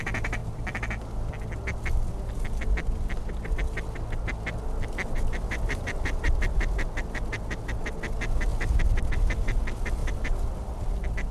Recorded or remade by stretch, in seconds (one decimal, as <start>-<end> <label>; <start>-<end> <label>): 0.0-11.3 recorded